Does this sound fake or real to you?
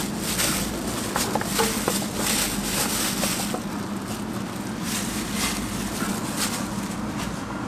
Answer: real